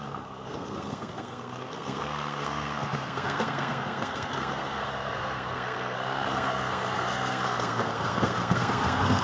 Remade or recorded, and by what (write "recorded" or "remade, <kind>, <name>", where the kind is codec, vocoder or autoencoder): remade, codec, SNAC